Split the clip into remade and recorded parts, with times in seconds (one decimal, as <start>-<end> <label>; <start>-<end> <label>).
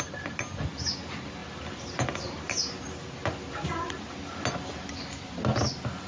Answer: 0.0-6.1 recorded